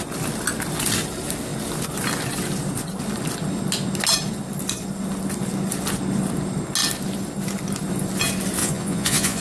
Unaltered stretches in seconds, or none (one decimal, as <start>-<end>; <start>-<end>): 0.0-8.6